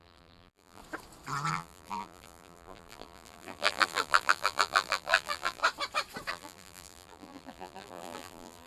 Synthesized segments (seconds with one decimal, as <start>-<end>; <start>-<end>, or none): 0.0-0.8; 1.5-5.6; 6.3-8.7